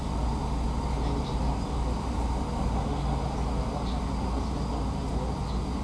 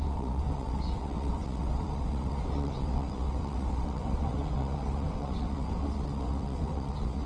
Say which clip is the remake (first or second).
second